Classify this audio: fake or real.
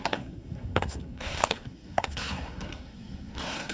fake